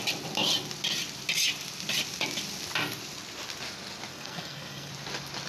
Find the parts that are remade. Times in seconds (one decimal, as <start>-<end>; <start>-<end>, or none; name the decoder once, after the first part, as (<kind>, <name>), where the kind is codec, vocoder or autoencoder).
4.1-4.9 (codec, SNAC)